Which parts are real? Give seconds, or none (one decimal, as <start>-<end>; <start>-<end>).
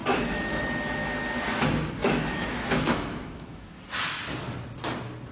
0.6-2.0; 3.7-5.3